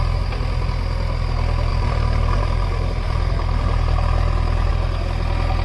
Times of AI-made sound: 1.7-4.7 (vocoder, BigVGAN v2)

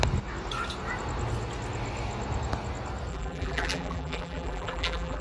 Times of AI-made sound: 3.1-5.2 (vocoder, BigVGAN v2)

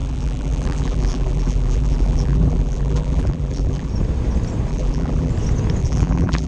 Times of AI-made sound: 0.0-3.9 (vocoder, BigVGAN v2); 4.7-5.3; 5.8-6.5

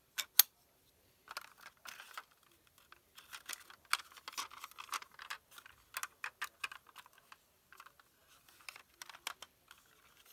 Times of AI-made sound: none